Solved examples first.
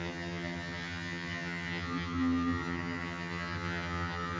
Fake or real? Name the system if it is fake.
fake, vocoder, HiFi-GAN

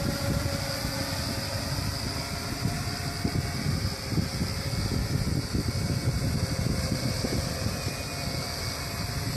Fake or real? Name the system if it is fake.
real